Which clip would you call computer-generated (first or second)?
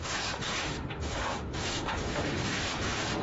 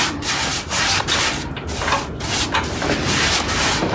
first